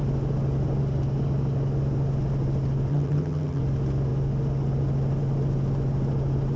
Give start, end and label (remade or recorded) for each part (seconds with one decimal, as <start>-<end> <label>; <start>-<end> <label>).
0.0-2.9 recorded; 2.9-3.6 remade; 3.6-6.6 recorded